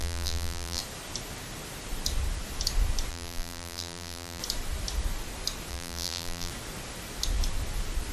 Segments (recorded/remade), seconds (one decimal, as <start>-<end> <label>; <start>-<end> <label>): 0.0-0.8 remade; 0.8-3.1 recorded; 3.1-4.4 remade; 4.4-5.7 recorded; 5.7-6.5 remade; 6.5-8.1 recorded